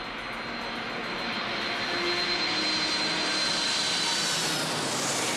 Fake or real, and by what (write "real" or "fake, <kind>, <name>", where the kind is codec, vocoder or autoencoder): real